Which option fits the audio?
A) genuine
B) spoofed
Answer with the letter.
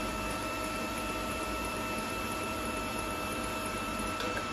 B